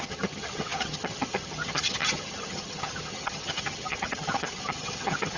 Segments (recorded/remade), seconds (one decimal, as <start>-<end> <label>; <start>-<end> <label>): 0.0-5.4 remade